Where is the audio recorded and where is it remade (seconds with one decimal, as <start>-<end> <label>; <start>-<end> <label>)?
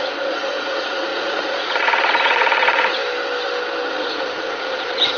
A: 0.0-3.0 remade; 3.0-3.9 recorded; 3.9-5.2 remade